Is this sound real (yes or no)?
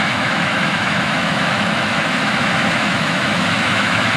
no